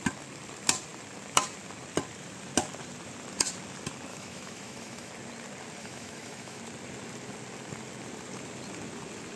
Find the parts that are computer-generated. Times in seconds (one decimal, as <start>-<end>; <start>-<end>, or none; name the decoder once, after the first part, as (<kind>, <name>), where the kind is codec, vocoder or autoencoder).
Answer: 4.1-5.1 (autoencoder, DAC-VAE); 5.8-6.6